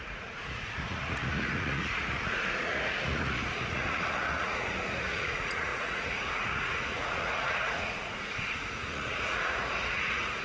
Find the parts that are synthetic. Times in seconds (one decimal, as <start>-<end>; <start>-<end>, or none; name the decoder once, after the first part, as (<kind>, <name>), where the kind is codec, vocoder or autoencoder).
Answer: 0.0-10.4 (vocoder, Vocos)